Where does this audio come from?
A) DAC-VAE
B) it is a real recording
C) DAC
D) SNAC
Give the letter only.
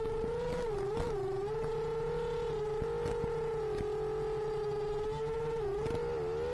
B